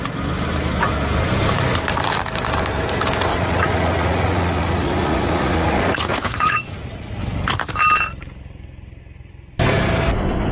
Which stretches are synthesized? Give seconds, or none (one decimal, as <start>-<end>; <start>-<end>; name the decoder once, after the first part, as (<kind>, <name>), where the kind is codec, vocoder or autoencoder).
3.3-7.2 (vocoder, Vocos)